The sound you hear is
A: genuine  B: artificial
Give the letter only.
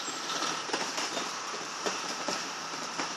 B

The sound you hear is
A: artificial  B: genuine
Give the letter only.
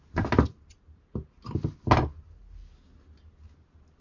B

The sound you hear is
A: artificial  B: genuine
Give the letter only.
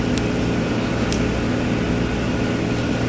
B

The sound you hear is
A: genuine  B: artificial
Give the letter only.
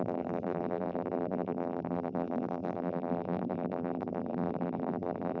B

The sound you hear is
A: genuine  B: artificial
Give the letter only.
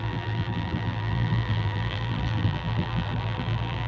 B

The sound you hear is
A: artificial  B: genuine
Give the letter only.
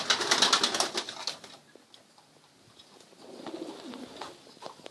B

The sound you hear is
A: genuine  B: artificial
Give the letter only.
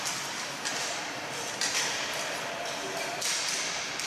B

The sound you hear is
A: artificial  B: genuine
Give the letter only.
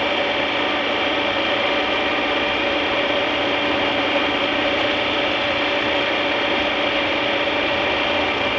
B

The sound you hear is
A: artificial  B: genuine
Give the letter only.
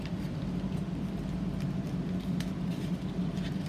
A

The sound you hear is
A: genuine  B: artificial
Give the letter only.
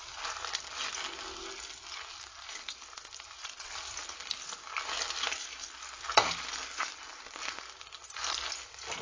A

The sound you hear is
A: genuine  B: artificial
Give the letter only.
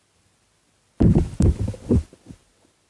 A